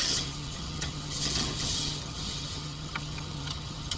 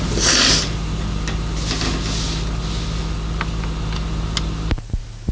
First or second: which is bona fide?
second